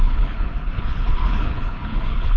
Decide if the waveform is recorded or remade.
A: remade